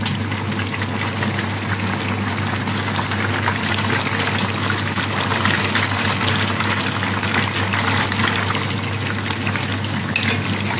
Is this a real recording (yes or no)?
yes